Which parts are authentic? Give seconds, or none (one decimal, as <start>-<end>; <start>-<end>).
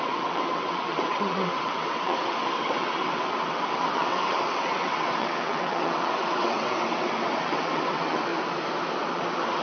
8.3-9.1